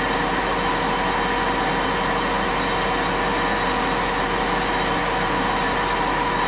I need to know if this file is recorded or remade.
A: recorded